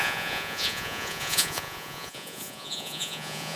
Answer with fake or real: fake